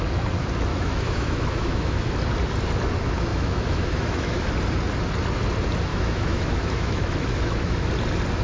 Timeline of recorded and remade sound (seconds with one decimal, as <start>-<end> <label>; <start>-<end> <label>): 0.0-0.7 recorded; 0.7-2.1 remade; 2.1-3.3 recorded; 3.3-4.5 remade; 4.5-5.9 recorded; 5.9-7.9 remade; 7.9-8.4 recorded